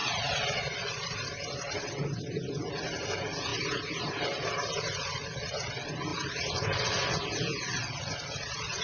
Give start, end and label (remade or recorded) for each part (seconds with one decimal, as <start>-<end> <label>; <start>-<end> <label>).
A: 0.0-1.9 remade; 1.9-3.5 recorded; 3.5-4.5 remade; 4.5-6.1 recorded; 6.1-7.1 remade; 7.1-8.8 recorded